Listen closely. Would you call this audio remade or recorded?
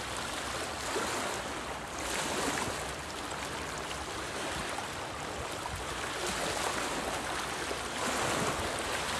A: recorded